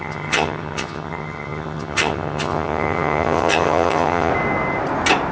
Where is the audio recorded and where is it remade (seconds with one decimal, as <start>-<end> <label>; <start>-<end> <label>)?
0.0-4.3 remade; 4.3-5.3 recorded